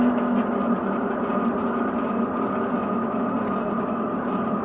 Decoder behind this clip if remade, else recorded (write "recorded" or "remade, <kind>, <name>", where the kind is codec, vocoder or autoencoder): recorded